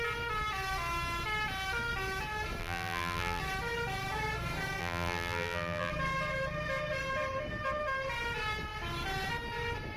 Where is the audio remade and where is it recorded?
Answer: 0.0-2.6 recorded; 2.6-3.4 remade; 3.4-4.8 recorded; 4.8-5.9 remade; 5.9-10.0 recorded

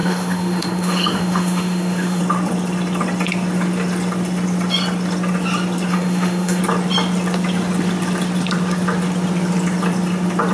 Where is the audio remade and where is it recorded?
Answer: 0.0-2.2 remade; 2.2-5.9 recorded; 5.9-6.6 remade; 6.6-10.5 recorded

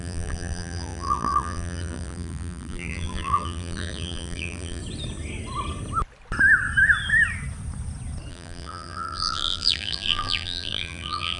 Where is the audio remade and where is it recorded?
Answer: 0.0-4.8 remade; 4.8-8.3 recorded; 8.3-11.4 remade

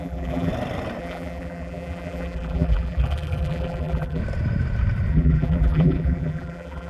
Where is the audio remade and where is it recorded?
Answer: 0.0-0.5 remade; 0.5-1.0 recorded; 1.0-4.2 remade; 4.2-5.1 recorded; 5.1-6.9 remade

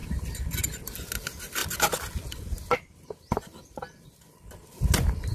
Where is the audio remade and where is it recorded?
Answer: 0.0-5.3 recorded

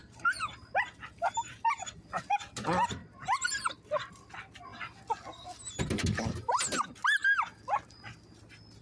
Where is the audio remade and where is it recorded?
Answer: 0.0-8.8 recorded

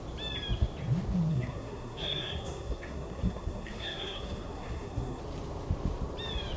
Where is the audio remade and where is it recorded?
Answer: 0.0-1.3 recorded; 1.3-5.2 remade; 5.2-6.6 recorded

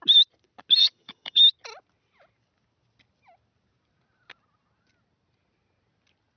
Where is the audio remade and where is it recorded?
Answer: 0.0-0.8 recorded; 0.8-1.4 remade; 1.4-6.4 recorded